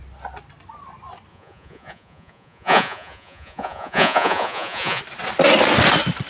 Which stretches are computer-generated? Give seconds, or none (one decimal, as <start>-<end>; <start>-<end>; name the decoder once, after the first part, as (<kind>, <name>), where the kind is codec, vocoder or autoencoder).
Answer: 1.3-5.0 (vocoder, Vocos)